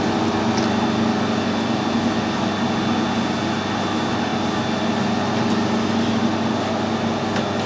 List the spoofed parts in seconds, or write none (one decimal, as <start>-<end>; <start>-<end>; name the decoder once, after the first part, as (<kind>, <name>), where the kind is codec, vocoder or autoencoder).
none